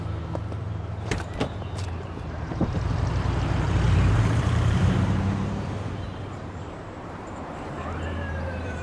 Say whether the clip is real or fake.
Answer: fake